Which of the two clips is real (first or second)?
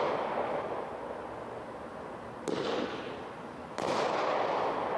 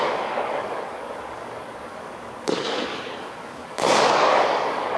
first